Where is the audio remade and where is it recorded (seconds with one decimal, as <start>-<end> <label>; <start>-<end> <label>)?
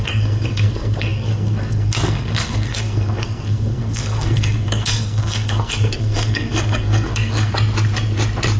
0.0-7.5 remade; 7.5-8.6 recorded